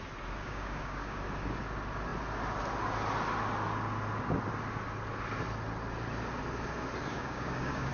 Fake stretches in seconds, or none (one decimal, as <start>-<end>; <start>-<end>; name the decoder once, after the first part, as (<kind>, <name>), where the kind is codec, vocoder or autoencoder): 0.4-1.2 (codec, DAC); 7.1-7.9